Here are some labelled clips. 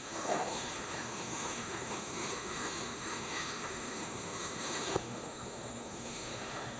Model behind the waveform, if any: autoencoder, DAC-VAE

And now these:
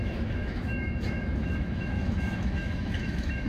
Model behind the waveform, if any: autoencoder, DAC-VAE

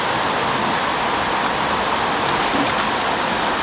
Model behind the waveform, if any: none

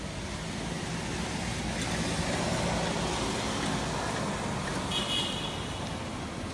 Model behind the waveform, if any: none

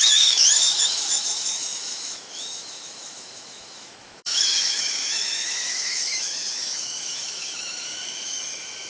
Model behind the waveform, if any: autoencoder, DAC-VAE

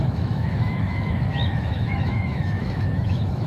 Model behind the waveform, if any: autoencoder, DAC-VAE